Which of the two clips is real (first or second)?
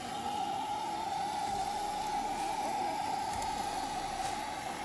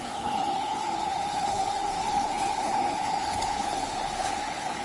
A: first